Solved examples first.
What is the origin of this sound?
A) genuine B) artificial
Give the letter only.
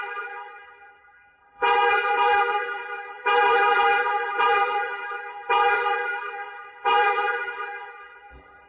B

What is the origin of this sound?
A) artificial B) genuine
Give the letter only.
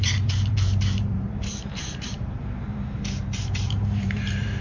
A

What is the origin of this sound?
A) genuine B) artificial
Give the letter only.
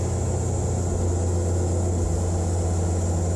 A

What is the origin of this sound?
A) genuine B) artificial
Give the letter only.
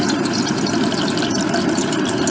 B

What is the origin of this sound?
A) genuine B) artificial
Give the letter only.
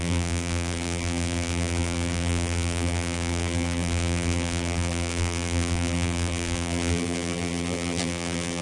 B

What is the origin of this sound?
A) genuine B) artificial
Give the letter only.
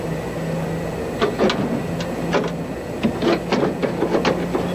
A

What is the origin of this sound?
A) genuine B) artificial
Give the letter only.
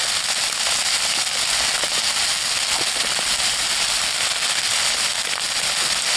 A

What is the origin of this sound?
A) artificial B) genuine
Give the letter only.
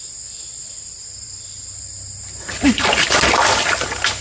B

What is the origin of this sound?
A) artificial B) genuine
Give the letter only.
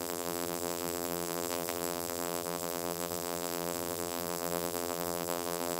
A